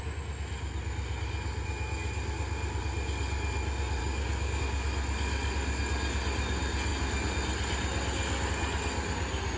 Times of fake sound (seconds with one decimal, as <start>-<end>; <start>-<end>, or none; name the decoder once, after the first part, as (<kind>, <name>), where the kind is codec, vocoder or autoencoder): 4.0-4.6 (codec, DAC)